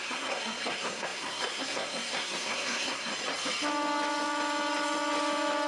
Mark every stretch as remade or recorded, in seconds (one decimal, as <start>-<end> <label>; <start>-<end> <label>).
0.0-3.1 remade; 3.1-5.7 recorded